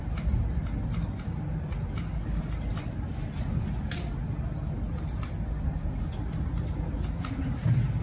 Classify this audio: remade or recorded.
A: recorded